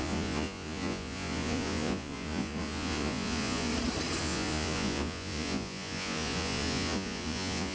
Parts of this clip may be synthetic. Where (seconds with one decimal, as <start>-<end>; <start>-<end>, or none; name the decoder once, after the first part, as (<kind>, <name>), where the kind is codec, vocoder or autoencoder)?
0.0-3.7 (vocoder, Vocos); 4.2-7.7